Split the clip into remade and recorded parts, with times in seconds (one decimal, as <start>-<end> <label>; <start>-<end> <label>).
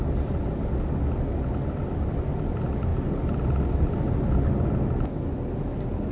0.0-6.1 recorded